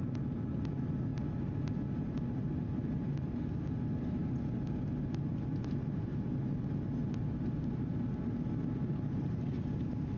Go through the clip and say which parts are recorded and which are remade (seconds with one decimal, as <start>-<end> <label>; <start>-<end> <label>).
0.0-10.2 recorded